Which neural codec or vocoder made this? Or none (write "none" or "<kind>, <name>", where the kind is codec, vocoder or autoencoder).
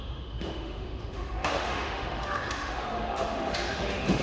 autoencoder, DAC-VAE